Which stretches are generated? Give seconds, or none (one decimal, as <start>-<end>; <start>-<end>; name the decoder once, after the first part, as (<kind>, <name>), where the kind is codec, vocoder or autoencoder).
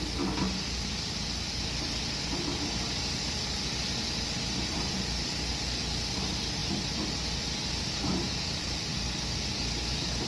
6.6-8.9 (vocoder, BigVGAN v2)